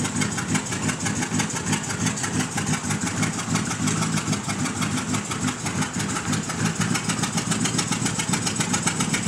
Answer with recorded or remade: recorded